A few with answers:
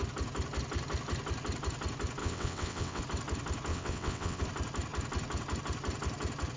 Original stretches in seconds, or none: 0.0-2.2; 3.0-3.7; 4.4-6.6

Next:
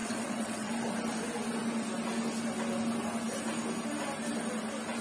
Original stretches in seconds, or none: 0.7-5.0

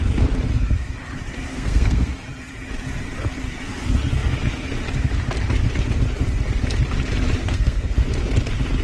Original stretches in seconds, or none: 0.0-1.5; 2.1-7.4; 7.9-8.8

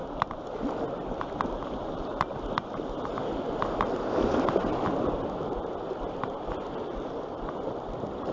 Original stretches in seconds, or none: 0.0-8.3

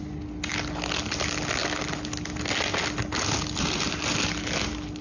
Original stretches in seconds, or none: 0.0-5.0

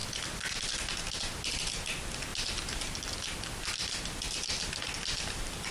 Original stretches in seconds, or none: 0.7-5.7